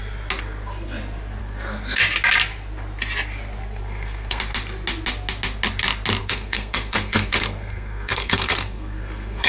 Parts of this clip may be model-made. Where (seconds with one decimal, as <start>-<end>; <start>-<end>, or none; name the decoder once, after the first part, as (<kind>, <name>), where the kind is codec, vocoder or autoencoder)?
1.4-2.0 (codec, SNAC); 3.8-4.4; 6.2-9.5